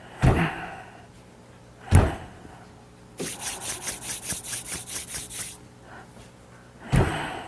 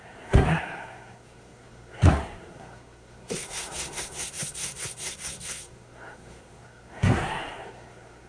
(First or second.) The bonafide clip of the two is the first